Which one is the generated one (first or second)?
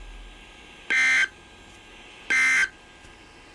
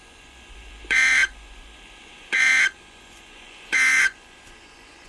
second